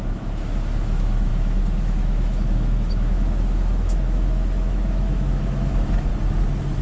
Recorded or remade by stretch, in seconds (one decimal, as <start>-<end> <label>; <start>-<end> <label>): 0.0-6.1 remade; 6.1-6.8 recorded